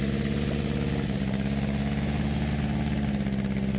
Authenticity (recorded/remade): recorded